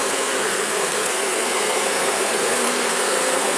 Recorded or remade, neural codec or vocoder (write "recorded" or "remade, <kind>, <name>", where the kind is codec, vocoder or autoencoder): remade, codec, SNAC